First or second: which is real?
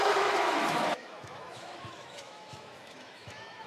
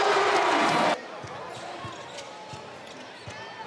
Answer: second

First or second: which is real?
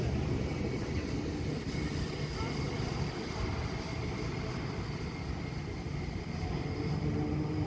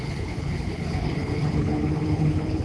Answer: first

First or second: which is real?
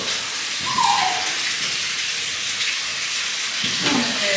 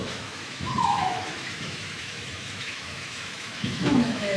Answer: first